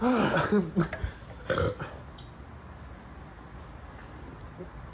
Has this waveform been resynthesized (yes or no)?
no